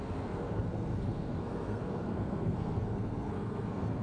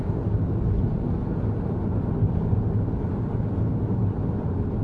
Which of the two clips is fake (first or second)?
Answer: first